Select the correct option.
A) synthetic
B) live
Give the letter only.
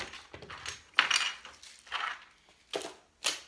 B